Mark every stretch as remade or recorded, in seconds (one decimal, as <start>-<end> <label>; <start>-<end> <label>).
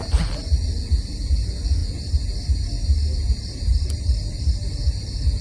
0.0-3.7 recorded; 3.7-4.7 remade; 4.7-5.4 recorded